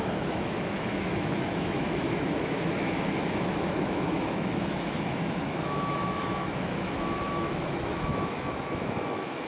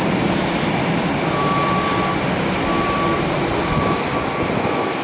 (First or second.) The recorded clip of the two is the second